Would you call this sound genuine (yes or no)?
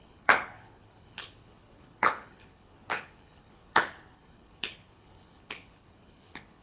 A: no